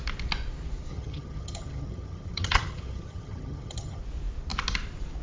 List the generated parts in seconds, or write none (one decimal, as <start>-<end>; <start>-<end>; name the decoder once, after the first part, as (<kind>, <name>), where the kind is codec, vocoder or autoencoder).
0.9-4.0 (vocoder, HiFi-GAN)